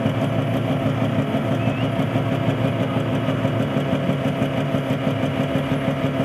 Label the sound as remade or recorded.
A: recorded